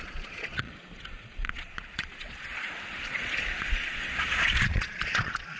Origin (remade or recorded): remade